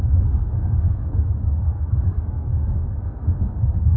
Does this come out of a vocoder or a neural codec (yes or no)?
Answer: yes